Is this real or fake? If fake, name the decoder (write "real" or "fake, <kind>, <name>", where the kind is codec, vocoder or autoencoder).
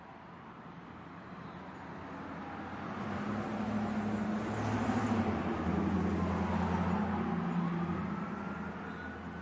real